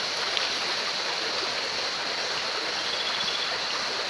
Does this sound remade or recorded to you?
recorded